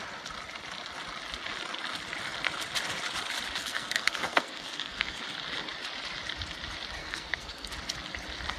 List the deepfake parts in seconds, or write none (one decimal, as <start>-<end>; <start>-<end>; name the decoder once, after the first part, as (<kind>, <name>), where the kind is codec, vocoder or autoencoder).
3.6-5.2 (codec, SNAC); 7.0-7.7